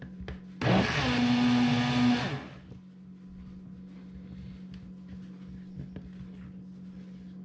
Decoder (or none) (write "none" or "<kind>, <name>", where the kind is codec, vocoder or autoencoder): none